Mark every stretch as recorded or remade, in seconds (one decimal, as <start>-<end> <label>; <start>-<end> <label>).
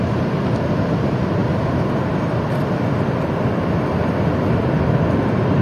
0.0-1.4 remade; 1.4-4.8 recorded; 4.8-5.6 remade